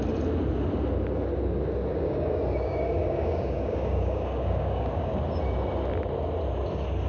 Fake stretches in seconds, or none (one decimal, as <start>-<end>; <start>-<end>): 1.9-5.2

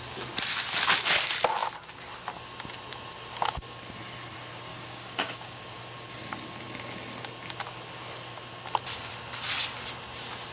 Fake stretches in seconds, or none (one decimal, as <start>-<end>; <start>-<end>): 4.7-5.6

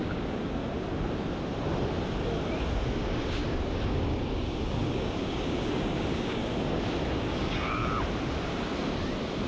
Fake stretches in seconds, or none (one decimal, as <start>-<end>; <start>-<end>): 0.0-0.6; 2.6-7.8

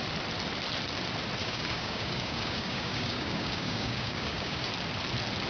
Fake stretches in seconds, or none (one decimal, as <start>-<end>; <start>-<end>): 1.4-4.7